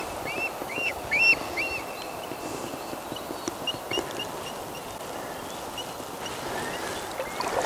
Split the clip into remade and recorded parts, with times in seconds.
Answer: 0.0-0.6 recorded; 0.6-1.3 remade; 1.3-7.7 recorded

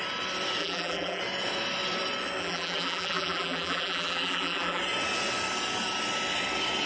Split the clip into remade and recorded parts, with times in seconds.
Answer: 0.0-0.6 recorded; 0.6-1.2 remade; 1.2-2.4 recorded; 2.4-4.8 remade; 4.8-6.9 recorded

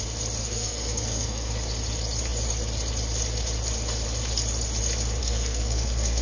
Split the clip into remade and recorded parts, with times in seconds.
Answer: 0.0-0.4 recorded; 0.4-1.5 remade; 1.5-5.2 recorded; 5.2-6.2 remade

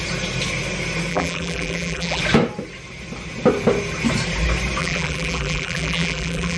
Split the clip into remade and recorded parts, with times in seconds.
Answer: 0.0-1.1 recorded; 1.1-2.2 remade; 2.2-4.8 recorded; 4.8-6.6 remade

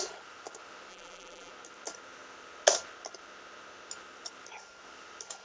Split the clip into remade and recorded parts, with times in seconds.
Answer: 0.0-0.9 recorded; 0.9-1.5 remade; 1.5-5.4 recorded

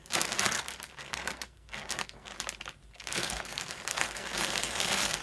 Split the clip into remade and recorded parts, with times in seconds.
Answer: 0.0-2.3 remade; 2.3-2.9 recorded; 2.9-5.2 remade

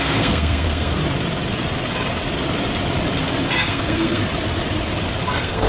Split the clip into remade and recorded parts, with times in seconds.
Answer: 0.0-1.0 remade; 1.0-3.5 recorded; 3.5-4.2 remade; 4.2-5.2 recorded; 5.2-5.7 remade